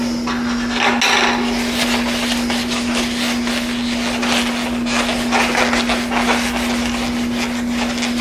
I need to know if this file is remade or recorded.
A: recorded